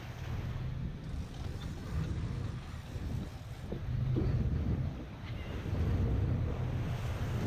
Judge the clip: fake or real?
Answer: real